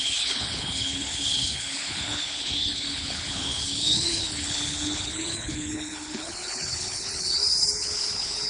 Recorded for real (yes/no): no